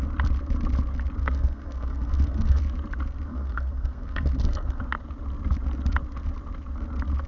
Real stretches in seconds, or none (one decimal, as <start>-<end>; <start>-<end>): 0.0-1.2; 2.6-3.3; 4.8-7.3